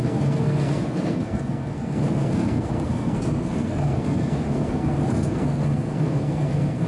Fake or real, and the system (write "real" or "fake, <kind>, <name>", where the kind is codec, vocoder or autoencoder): fake, codec, SNAC